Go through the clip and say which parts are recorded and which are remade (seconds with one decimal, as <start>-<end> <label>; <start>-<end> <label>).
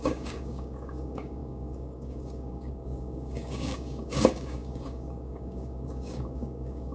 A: 0.0-6.9 remade